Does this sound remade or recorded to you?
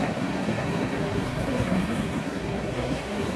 remade